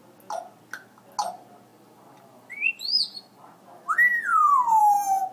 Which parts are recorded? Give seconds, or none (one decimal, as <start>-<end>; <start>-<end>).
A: 0.0-1.7; 2.7-4.3; 4.8-5.3